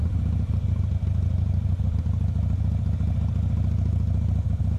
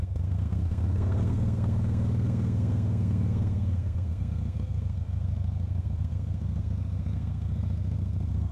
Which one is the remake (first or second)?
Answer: second